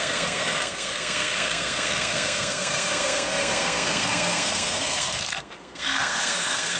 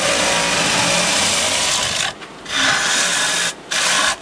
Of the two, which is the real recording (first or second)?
second